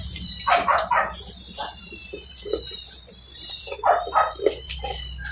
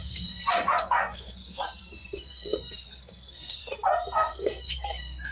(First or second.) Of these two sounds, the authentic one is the first